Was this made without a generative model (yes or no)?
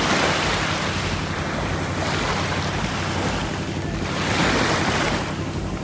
yes